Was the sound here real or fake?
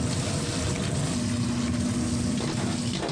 real